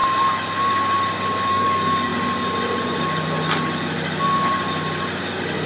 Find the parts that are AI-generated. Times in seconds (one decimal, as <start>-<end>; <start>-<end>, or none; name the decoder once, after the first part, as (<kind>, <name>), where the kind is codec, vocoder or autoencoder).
1.5-2.1 (codec, DAC)